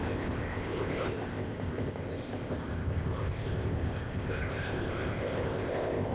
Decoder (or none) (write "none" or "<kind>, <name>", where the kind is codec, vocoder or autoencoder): codec, ZipCodec